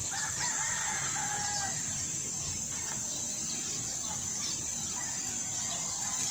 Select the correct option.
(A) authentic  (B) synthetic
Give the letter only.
A